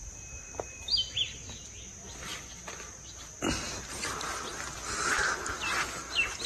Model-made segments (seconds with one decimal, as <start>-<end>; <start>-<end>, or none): 2.3-3.4